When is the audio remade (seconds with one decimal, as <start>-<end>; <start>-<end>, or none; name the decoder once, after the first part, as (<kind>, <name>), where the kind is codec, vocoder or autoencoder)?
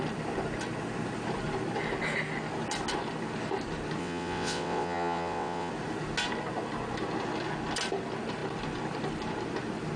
4.0-5.7 (vocoder, WaveNeXt)